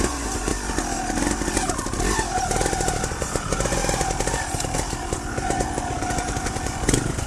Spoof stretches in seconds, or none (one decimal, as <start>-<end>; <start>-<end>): 0.0-0.5; 3.0-3.8; 5.0-7.3